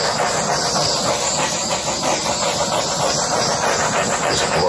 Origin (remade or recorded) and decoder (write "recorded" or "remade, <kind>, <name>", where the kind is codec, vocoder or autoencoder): recorded